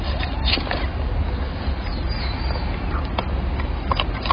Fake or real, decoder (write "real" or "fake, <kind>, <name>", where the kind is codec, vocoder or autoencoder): real